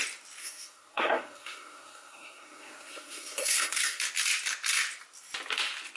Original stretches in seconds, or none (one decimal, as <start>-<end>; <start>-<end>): 0.0-0.4; 4.0-6.0